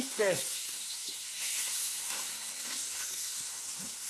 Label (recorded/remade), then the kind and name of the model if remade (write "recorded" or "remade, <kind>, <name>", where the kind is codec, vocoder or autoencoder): remade, codec, SNAC